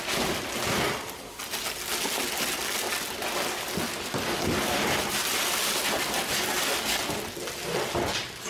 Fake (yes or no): no